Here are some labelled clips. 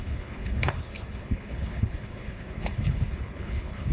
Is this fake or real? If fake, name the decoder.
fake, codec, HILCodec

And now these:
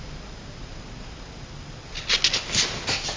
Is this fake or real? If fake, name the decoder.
real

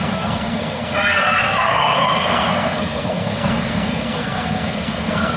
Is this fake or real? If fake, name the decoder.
fake, codec, SNAC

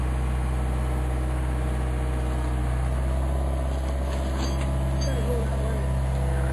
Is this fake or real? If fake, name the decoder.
real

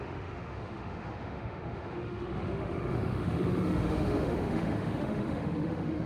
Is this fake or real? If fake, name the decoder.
fake, autoencoder, DAC-VAE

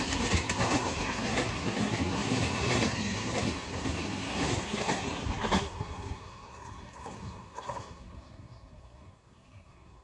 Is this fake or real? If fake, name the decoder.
fake, codec, SNAC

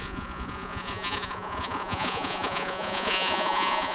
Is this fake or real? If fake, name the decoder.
fake, vocoder, Vocos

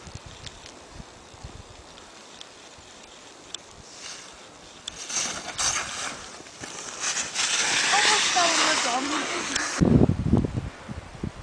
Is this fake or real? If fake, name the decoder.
real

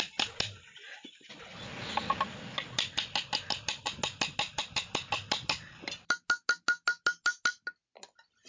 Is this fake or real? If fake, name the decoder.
real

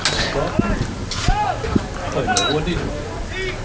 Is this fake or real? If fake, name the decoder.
real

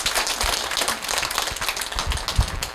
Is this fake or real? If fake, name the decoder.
real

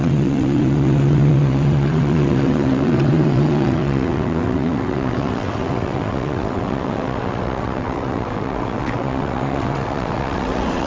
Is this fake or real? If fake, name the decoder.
fake, vocoder, WaveNeXt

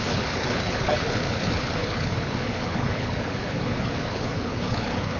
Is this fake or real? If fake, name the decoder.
fake, codec, HILCodec